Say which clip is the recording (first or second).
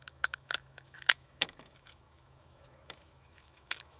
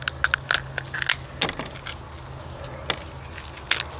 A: second